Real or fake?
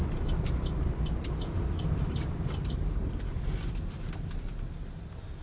real